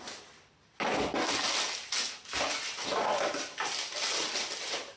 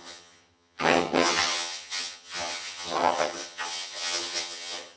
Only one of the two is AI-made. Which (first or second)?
second